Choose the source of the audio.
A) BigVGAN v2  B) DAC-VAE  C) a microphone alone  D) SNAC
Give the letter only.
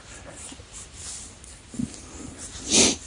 C